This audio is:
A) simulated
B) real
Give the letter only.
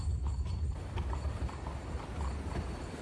B